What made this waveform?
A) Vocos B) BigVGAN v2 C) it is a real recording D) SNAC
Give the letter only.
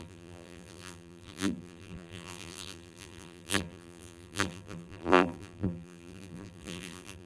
B